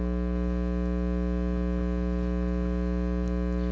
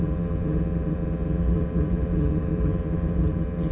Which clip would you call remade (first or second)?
second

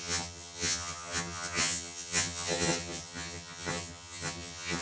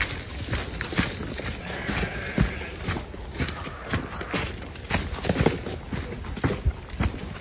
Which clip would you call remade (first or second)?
first